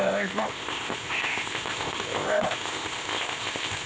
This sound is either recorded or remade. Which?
remade